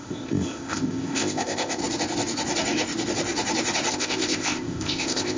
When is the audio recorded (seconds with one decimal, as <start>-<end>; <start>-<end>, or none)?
1.8-3.9